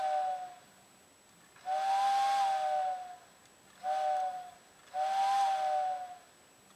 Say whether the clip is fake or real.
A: real